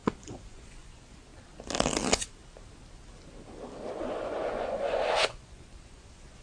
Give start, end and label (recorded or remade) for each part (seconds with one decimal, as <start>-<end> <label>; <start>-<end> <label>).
0.0-1.3 remade; 1.3-3.9 recorded; 3.9-6.4 remade